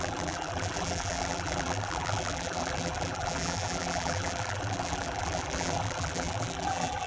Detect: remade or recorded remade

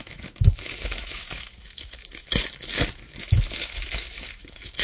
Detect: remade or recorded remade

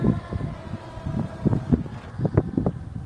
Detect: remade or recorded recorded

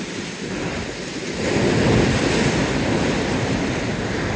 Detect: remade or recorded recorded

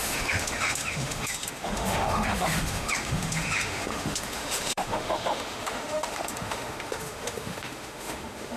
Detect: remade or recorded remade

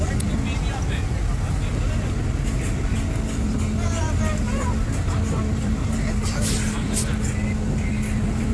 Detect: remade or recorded recorded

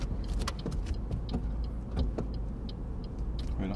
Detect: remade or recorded recorded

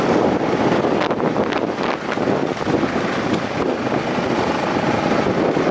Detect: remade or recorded recorded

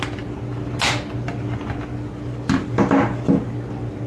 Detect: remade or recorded recorded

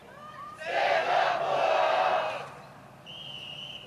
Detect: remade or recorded remade